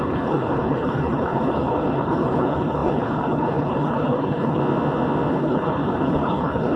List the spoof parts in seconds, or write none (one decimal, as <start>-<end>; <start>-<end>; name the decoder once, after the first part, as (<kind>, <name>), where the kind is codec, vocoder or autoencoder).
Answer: 0.0-4.6 (codec, HILCodec); 5.3-6.8